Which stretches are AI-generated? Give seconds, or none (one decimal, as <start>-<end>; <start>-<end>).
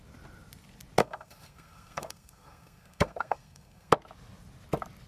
1.0-3.9